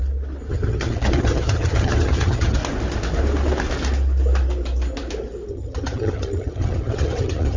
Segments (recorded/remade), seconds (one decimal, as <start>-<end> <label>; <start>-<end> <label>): 0.0-0.5 recorded; 0.5-2.6 remade; 2.6-5.5 recorded; 5.5-7.6 remade